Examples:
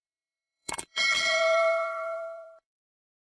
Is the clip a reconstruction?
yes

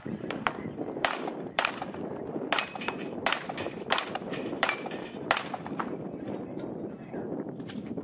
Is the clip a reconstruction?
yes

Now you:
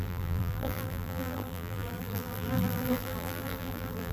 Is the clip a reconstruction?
yes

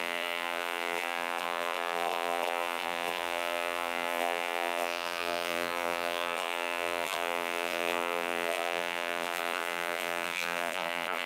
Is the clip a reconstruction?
yes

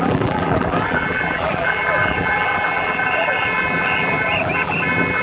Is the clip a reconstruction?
yes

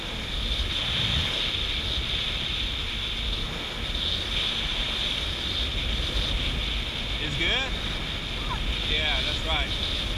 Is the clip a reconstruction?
no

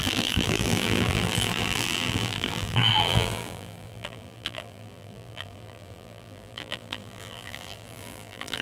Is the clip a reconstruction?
yes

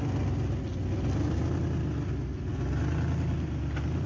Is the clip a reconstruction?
no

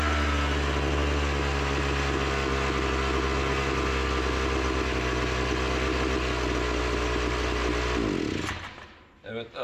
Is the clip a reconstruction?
no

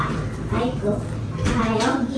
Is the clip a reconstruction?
yes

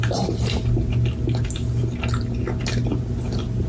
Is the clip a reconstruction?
no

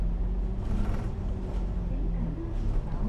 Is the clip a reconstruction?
no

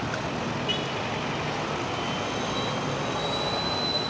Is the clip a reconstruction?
no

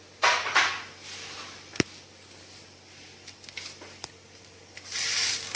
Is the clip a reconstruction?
yes